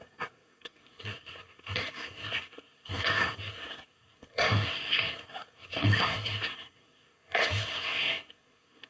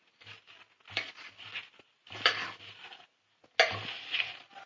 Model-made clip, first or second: first